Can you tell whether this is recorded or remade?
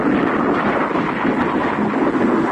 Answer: recorded